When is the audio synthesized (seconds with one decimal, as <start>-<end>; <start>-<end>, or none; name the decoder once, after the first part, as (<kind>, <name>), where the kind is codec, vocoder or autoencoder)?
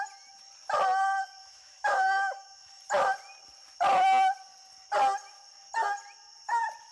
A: 1.4-2.8 (autoencoder, DAC-VAE)